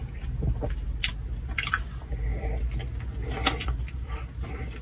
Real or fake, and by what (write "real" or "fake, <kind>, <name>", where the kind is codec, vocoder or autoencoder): real